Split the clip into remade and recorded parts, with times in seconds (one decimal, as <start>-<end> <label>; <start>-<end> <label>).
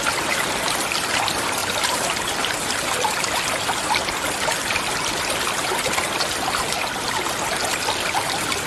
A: 0.0-1.6 recorded; 1.6-2.5 remade; 2.5-8.7 recorded